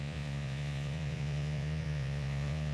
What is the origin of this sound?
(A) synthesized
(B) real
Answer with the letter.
A